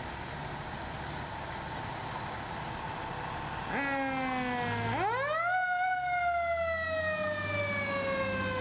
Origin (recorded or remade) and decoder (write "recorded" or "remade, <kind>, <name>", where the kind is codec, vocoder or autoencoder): recorded